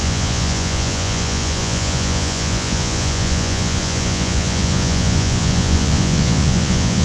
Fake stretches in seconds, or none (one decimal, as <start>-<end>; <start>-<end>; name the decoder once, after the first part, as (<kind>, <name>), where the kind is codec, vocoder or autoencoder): 0.0-7.0 (vocoder, Vocos)